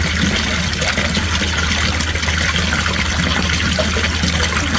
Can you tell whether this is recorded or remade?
recorded